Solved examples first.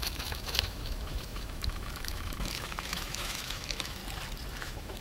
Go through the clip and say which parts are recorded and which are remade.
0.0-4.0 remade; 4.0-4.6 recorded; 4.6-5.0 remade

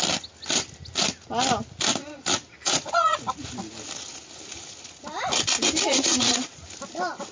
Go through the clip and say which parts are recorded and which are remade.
0.0-2.0 recorded; 2.0-3.2 remade; 3.2-5.9 recorded; 5.9-6.6 remade; 6.6-7.3 recorded

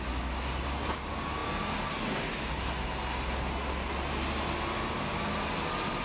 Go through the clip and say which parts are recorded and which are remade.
0.0-6.0 recorded

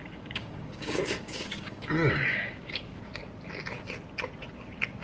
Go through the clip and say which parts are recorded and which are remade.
0.0-3.0 remade; 3.0-5.0 recorded

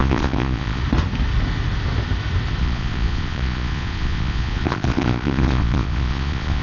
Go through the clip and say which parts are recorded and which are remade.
0.0-0.8 remade; 0.8-2.6 recorded; 2.6-6.6 remade